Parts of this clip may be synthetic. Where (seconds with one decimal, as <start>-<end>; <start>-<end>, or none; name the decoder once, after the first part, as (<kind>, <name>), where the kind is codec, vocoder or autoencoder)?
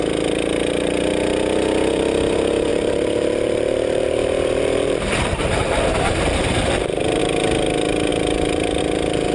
2.7-7.2 (vocoder, BigVGAN v2)